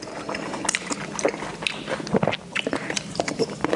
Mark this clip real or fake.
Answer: real